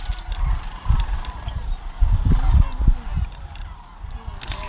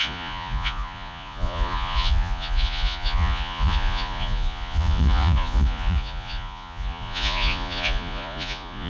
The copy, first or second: second